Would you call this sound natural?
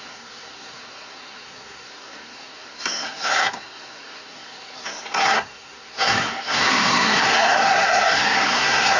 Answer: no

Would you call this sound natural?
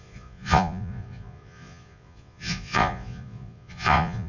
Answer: no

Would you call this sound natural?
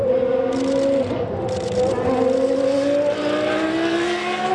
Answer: yes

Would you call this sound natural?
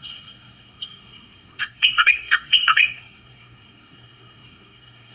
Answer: no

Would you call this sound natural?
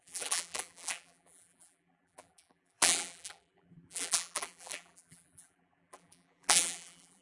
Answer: no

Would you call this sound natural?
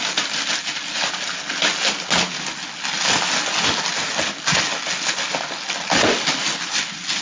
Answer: yes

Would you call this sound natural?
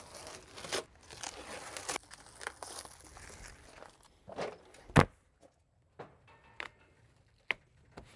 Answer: yes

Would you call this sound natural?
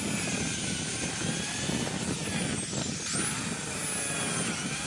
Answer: yes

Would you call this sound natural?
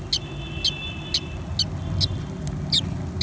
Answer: yes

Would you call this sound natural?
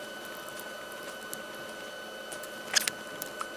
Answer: yes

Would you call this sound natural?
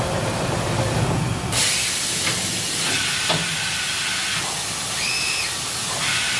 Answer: yes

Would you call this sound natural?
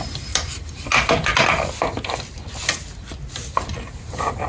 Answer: yes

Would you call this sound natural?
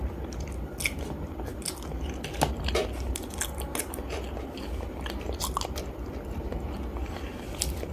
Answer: yes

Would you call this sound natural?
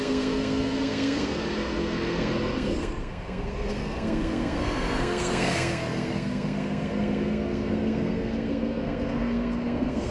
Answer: no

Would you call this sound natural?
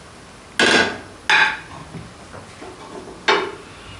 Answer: yes